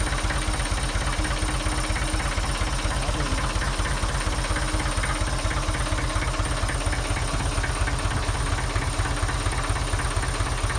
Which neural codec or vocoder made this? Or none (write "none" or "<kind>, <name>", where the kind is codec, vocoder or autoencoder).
none